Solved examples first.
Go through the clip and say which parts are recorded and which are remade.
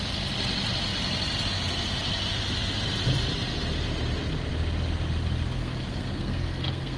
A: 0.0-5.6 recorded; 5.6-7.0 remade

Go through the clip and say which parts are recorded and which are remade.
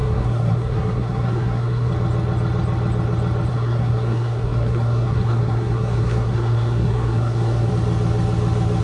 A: 0.0-1.9 remade; 1.9-3.5 recorded; 3.5-7.7 remade; 7.7-8.8 recorded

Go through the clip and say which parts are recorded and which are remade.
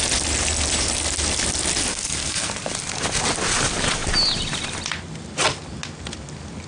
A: 0.0-1.9 recorded; 1.9-2.5 remade; 2.5-6.7 recorded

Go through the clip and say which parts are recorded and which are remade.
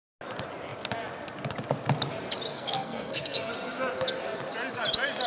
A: 0.0-2.5 recorded; 2.5-3.5 remade; 3.5-5.3 recorded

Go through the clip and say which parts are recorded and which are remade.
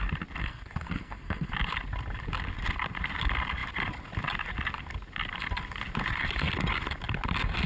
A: 0.0-0.4 recorded; 0.4-1.5 remade; 1.5-7.7 recorded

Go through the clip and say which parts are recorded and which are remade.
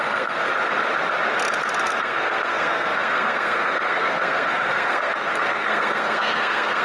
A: 0.0-0.5 remade; 0.5-1.8 recorded; 1.8-6.8 remade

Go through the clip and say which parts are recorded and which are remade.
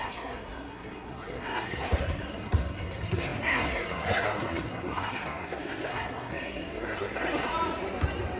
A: 0.0-7.5 remade; 7.5-8.4 recorded